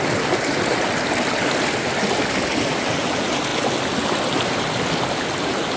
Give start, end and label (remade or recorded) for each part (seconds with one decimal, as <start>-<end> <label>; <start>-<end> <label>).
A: 0.0-5.8 recorded